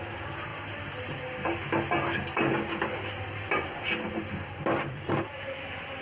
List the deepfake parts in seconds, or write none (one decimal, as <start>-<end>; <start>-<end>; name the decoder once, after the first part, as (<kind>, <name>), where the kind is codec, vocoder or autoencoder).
0.0-0.5 (vocoder, BigVGAN v2); 4.1-6.0